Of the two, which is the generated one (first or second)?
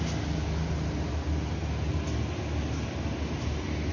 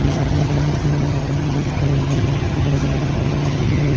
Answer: second